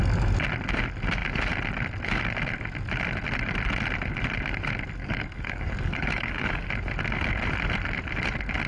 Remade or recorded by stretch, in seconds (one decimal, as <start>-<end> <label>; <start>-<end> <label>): 0.0-5.0 recorded; 5.0-6.7 remade; 6.7-8.7 recorded